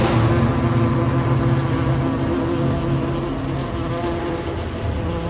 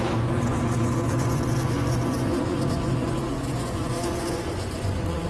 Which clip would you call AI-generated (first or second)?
second